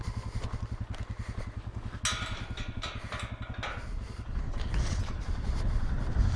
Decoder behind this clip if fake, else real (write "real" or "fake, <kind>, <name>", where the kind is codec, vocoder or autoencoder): real